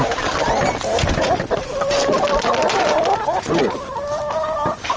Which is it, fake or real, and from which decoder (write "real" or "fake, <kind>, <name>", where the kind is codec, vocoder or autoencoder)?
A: real